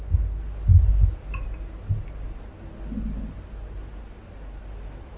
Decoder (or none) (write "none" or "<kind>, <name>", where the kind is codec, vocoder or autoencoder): none